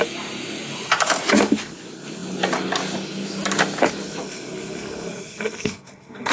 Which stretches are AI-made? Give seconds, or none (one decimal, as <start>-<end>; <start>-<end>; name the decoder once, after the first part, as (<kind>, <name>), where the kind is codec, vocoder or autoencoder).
4.2-6.3 (codec, SNAC)